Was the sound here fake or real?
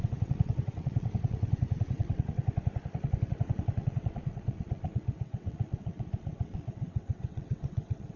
fake